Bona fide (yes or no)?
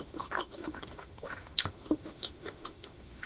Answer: no